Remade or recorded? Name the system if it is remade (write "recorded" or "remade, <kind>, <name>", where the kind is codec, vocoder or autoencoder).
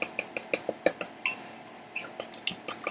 recorded